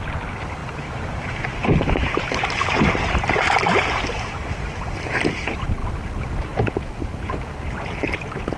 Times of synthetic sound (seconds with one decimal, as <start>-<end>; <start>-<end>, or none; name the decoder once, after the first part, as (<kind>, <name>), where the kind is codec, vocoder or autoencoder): 0.6-4.9 (vocoder, BigVGAN v2); 7.1-8.2